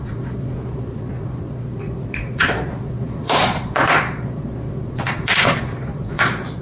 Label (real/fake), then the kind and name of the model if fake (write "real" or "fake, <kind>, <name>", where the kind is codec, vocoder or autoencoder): fake, vocoder, Vocos